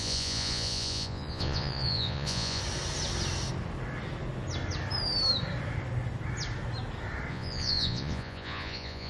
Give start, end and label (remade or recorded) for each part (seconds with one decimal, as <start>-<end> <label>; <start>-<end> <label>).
0.0-2.6 remade; 2.6-7.3 recorded; 7.3-9.1 remade